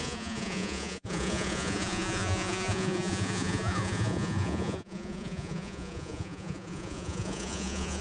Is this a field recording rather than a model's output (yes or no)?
no